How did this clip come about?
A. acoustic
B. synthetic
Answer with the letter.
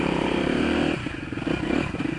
B